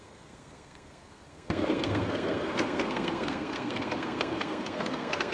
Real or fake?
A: fake